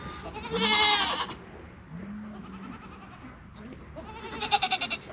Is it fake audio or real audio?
real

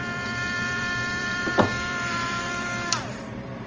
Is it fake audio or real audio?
fake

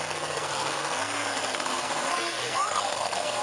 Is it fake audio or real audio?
fake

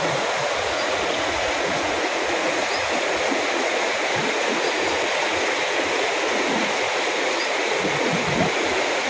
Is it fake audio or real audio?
fake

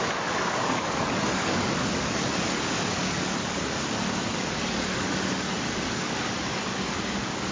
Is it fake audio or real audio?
fake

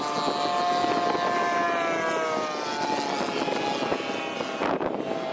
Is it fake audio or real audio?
real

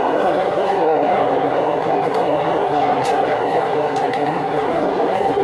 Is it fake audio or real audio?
fake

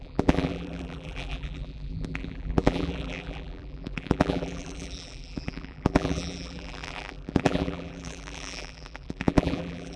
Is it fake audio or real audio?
fake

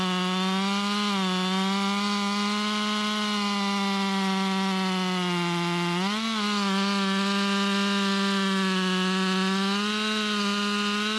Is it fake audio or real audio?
real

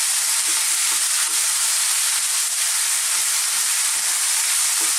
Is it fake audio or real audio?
fake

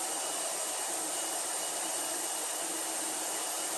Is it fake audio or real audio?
real